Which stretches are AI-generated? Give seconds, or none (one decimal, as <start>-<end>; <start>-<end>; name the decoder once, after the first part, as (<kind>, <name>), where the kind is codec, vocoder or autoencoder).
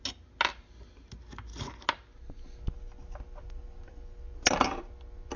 none